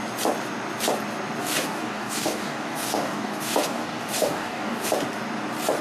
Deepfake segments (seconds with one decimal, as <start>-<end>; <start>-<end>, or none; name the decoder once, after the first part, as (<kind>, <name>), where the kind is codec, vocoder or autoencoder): 1.4-4.9 (codec, DAC)